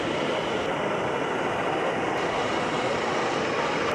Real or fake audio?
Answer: real